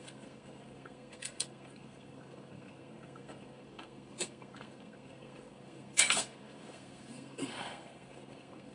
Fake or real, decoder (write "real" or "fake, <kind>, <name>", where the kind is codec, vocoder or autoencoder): fake, codec, SNAC